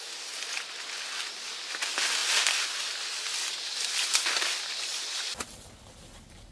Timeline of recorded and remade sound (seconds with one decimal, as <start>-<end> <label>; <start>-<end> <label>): 0.0-6.5 recorded